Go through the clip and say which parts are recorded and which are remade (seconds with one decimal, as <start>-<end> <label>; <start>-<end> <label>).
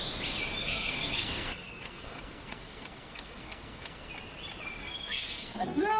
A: 0.0-0.6 recorded; 0.6-4.1 remade; 4.1-4.8 recorded; 4.8-6.0 remade